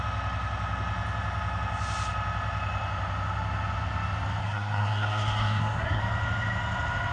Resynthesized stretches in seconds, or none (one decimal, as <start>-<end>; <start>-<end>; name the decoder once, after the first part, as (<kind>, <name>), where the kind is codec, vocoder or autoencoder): 4.4-6.0 (codec, SNAC)